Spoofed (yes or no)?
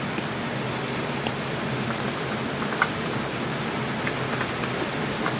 no